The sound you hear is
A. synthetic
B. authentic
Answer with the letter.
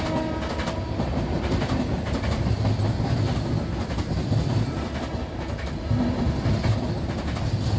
B